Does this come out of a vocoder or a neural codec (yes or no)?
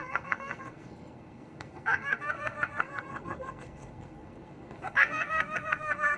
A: yes